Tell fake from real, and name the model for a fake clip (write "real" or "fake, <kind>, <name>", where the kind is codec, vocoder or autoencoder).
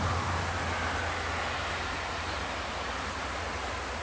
real